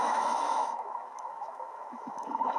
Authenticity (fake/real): fake